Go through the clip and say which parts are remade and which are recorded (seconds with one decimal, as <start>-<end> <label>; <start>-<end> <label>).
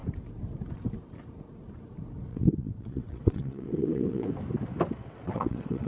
0.0-2.3 recorded; 2.3-4.3 remade; 4.3-5.0 recorded; 5.0-5.9 remade